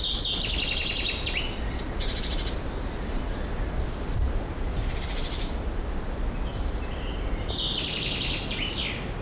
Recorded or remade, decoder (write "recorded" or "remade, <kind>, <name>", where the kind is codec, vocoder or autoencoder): recorded